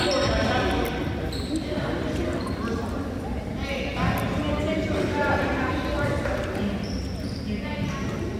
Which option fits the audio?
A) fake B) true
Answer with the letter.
B